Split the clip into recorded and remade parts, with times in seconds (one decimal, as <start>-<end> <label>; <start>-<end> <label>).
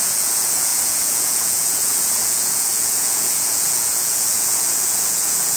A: 0.0-5.6 remade